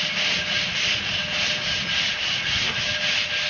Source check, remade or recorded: recorded